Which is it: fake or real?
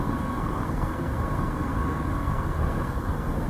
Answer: fake